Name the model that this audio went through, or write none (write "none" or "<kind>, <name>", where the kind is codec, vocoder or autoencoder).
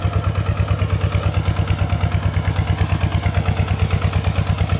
none